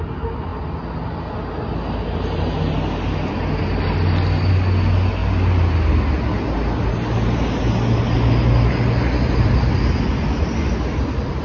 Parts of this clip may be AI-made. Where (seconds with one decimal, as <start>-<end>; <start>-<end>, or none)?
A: none